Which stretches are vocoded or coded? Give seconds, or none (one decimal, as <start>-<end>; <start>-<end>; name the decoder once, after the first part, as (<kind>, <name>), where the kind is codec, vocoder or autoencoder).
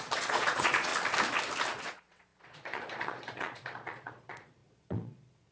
0.0-0.9 (vocoder, Vocos); 1.8-5.5